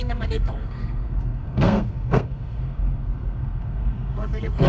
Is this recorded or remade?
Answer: remade